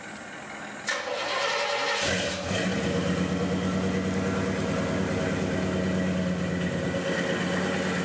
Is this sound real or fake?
real